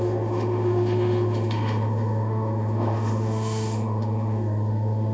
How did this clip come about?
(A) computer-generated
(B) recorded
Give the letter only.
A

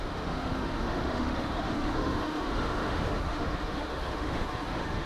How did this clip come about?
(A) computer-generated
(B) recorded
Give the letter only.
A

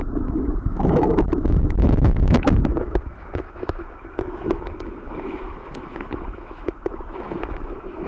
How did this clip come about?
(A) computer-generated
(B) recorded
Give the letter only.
A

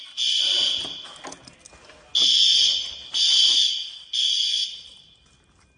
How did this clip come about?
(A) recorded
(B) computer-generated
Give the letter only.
A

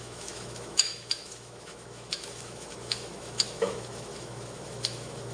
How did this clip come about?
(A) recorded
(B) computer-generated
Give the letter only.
B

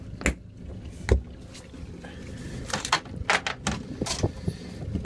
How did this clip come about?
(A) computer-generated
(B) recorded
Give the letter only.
B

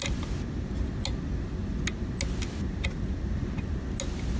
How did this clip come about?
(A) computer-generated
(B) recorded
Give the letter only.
B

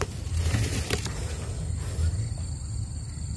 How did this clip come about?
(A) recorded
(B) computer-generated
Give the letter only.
A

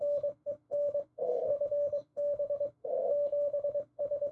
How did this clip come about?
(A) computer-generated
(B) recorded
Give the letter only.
A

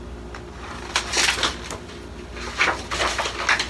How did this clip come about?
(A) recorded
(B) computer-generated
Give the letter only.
A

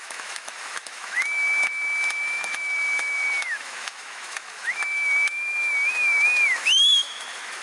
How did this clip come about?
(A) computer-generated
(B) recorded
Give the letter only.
A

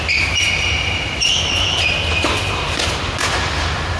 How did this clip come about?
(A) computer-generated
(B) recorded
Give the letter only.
B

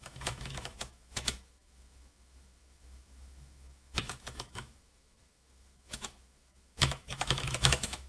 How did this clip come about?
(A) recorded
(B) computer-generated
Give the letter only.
B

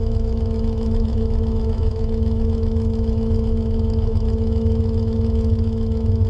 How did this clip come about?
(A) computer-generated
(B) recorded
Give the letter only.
A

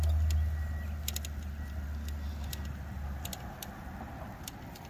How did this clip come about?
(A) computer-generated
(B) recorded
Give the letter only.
B